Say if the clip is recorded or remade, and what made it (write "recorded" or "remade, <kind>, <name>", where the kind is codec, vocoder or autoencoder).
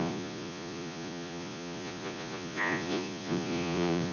remade, vocoder, Vocos